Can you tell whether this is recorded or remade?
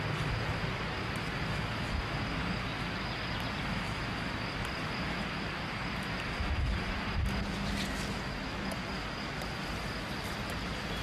recorded